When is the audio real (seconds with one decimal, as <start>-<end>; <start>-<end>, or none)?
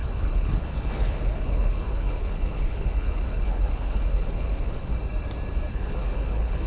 4.9-5.7